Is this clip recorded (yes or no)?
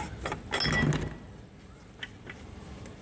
yes